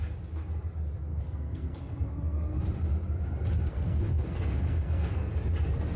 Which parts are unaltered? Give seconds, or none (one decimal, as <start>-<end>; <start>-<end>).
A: 0.0-1.1; 2.6-3.7; 5.3-6.0